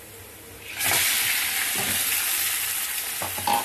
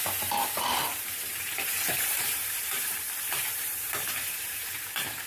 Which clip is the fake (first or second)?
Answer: second